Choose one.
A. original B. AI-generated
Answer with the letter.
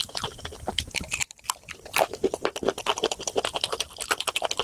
B